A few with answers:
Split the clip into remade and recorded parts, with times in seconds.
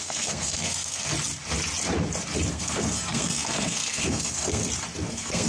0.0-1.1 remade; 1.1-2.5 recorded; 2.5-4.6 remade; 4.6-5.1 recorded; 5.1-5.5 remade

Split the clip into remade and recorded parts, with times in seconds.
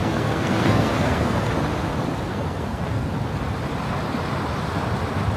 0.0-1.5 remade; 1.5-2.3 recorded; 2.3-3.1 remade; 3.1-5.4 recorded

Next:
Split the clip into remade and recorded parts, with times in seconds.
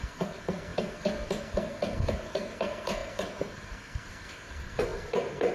0.0-5.5 remade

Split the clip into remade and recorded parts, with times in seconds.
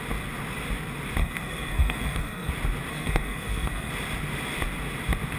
0.0-1.2 recorded; 1.2-2.5 remade; 2.5-2.9 recorded; 2.9-3.9 remade; 3.9-5.4 recorded